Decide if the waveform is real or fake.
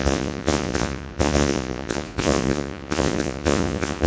fake